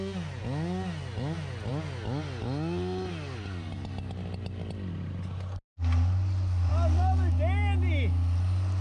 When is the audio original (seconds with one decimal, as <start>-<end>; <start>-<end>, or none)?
0.0-8.8

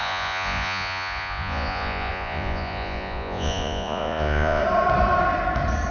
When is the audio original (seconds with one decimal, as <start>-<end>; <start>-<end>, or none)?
4.6-5.9

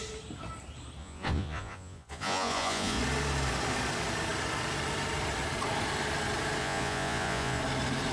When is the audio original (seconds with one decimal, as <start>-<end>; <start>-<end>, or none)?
0.0-1.0; 3.0-6.6; 7.6-8.1

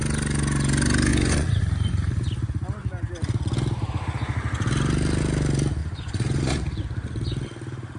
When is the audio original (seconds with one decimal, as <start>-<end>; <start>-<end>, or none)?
0.0-1.1; 1.6-5.8; 6.6-8.0